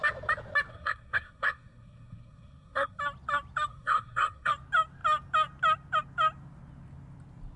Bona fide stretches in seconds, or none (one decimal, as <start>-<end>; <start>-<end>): 0.0-0.7; 3.0-3.7; 4.5-7.6